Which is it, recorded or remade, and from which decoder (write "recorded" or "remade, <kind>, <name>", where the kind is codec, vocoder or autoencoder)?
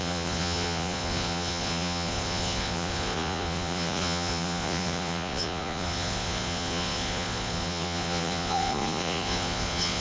remade, vocoder, Vocos